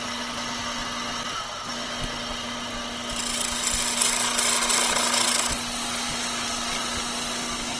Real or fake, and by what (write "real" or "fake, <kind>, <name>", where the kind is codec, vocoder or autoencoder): real